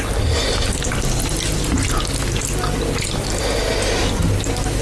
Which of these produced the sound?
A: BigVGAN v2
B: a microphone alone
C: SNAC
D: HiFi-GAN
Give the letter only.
B